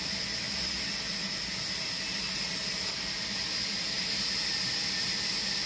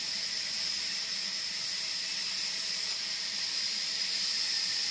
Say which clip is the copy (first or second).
second